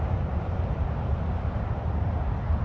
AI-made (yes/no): no